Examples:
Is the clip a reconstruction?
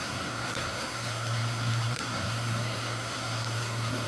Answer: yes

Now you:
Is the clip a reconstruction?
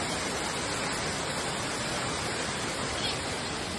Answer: no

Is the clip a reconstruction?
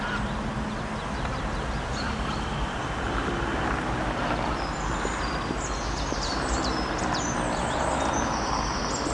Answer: no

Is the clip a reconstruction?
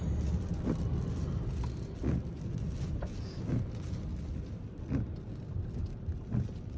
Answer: no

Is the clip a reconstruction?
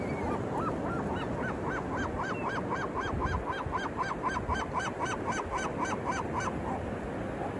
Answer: no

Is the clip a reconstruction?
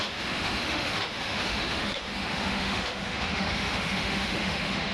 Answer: yes